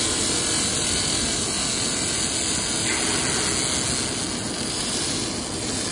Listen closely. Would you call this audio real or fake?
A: real